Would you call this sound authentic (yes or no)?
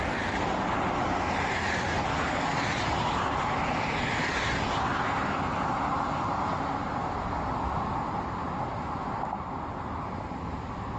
yes